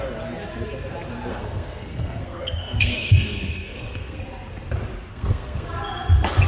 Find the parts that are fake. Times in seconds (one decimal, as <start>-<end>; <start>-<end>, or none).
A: 1.3-4.2; 5.1-5.7